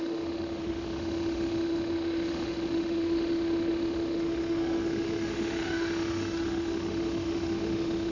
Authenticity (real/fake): fake